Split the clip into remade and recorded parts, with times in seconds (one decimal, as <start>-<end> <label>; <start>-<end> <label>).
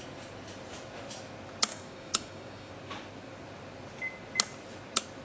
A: 0.0-1.7 recorded; 1.7-2.7 remade; 2.7-5.2 recorded